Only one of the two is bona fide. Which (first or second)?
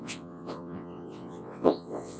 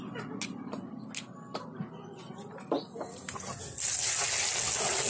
second